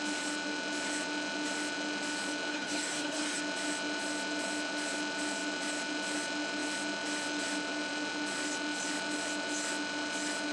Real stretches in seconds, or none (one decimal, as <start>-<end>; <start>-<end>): 0.0-2.5; 3.4-10.5